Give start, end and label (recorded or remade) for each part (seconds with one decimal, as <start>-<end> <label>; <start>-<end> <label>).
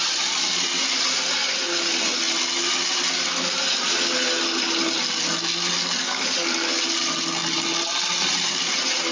0.0-6.0 recorded; 6.0-6.7 remade; 6.7-9.1 recorded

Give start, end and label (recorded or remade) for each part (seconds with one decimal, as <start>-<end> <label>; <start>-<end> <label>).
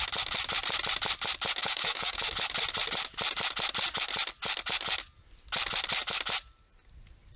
0.0-1.6 recorded; 1.6-2.3 remade; 2.3-7.4 recorded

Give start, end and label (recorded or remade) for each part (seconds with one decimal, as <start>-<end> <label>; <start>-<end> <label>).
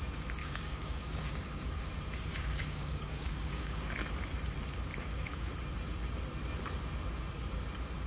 0.0-0.4 recorded; 0.4-1.9 remade; 1.9-2.3 recorded; 2.3-3.9 remade; 3.9-4.9 recorded; 4.9-5.5 remade; 5.5-8.1 recorded